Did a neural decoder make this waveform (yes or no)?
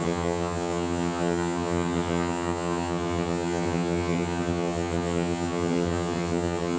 yes